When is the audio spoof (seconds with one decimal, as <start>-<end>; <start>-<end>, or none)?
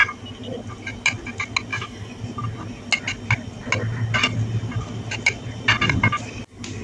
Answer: 1.7-2.2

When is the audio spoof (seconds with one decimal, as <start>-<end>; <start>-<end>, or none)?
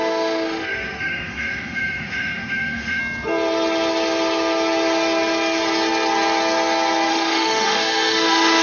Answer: 0.0-3.0; 7.1-8.6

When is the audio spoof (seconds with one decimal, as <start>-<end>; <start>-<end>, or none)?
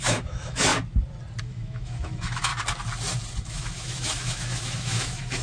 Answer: 0.0-0.7; 1.4-2.5; 3.4-5.4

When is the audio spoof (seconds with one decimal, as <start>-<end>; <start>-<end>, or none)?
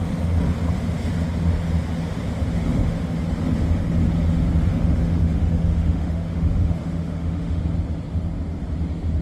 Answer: 2.4-3.0; 4.7-7.6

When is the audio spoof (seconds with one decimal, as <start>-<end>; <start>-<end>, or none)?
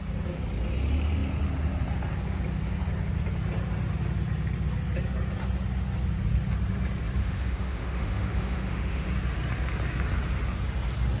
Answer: 7.2-9.1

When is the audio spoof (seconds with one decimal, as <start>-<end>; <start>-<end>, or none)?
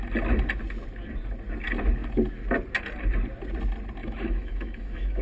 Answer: 4.0-5.2